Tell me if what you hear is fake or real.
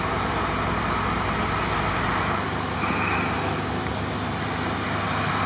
real